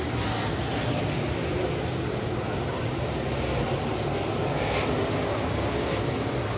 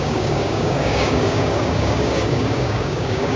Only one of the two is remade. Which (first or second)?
second